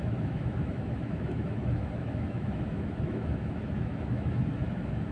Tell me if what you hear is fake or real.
fake